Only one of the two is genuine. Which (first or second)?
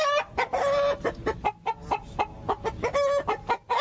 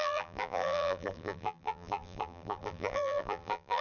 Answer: first